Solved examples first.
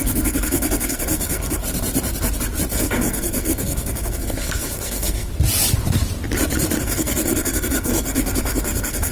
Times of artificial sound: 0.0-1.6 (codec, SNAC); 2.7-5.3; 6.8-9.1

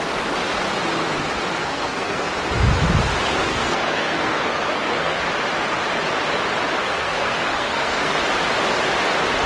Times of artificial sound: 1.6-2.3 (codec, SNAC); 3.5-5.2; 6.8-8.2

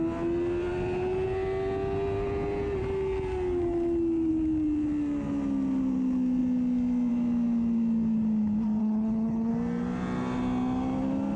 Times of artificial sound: 8.8-9.5 (codec, HILCodec)